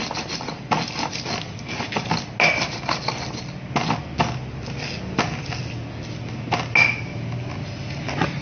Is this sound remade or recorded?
recorded